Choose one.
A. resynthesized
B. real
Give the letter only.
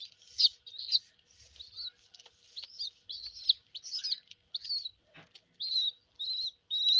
B